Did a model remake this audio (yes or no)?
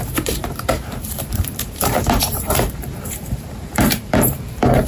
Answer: yes